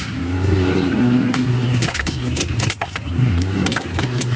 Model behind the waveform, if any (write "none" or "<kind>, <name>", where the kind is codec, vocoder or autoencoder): codec, SNAC